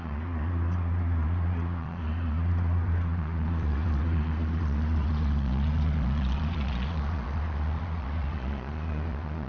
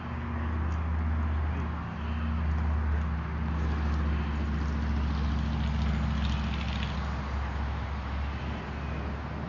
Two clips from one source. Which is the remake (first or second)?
first